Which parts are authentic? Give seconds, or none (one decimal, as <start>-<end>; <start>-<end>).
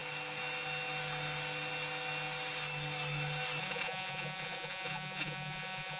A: 0.0-3.6